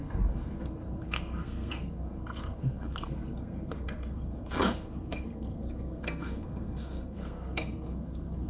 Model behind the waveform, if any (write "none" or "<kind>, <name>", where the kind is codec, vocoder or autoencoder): codec, SNAC